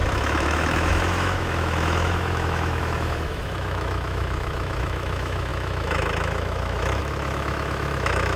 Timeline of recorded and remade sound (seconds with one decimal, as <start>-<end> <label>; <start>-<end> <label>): 0.0-8.4 remade